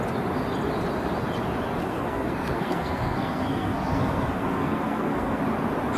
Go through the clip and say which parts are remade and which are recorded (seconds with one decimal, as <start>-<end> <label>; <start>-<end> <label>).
0.0-1.8 recorded; 1.8-5.4 remade; 5.4-6.0 recorded

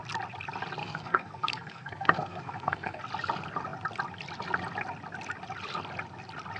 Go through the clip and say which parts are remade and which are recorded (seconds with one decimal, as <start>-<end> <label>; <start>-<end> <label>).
0.0-0.8 recorded; 0.8-3.0 remade; 3.0-6.6 recorded

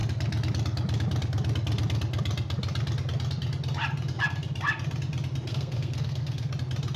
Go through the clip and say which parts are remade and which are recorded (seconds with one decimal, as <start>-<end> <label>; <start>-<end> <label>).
0.0-5.5 recorded; 5.5-6.5 remade; 6.5-7.0 recorded

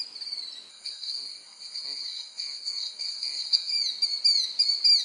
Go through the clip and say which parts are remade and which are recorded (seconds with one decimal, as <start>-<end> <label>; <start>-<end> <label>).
0.0-0.7 recorded; 0.7-3.7 remade; 3.7-5.0 recorded